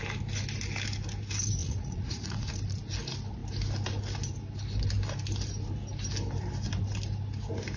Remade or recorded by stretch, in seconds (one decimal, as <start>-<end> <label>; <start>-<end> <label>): 0.0-1.6 recorded; 1.6-2.5 remade; 2.5-7.8 recorded